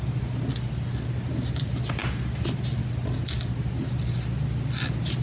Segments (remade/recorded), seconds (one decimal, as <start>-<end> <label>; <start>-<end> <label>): 0.0-5.2 recorded